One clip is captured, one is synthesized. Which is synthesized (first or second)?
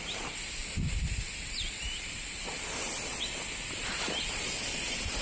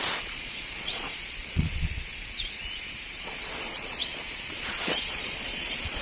second